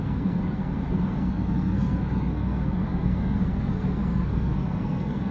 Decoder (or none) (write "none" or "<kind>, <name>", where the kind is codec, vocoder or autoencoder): codec, SNAC